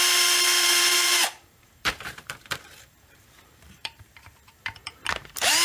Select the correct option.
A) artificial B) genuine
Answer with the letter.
A